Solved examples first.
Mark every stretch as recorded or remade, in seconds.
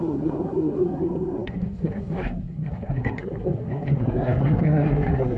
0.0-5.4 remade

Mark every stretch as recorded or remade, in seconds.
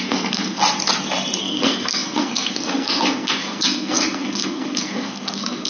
0.0-0.6 remade; 0.6-1.4 recorded; 1.4-5.7 remade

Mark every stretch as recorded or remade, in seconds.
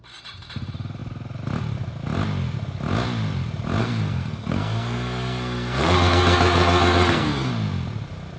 0.0-3.8 recorded; 3.8-7.5 remade; 7.5-8.4 recorded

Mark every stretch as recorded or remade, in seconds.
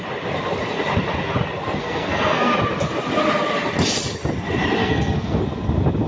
0.0-1.8 recorded; 1.8-2.5 remade; 2.5-4.8 recorded; 4.8-5.4 remade; 5.4-6.1 recorded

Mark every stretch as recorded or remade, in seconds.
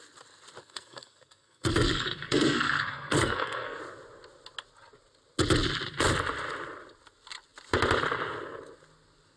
0.0-0.6 recorded; 0.6-3.8 remade; 3.8-9.4 recorded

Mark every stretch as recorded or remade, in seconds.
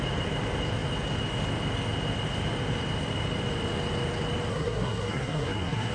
0.0-4.5 recorded; 4.5-5.9 remade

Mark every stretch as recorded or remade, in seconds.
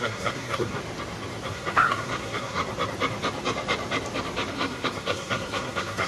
0.0-0.8 remade; 0.8-1.5 recorded; 1.5-2.6 remade; 2.6-4.5 recorded; 4.5-6.1 remade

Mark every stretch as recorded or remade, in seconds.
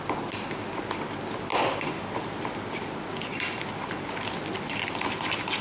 0.0-5.6 recorded